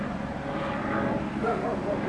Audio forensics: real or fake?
real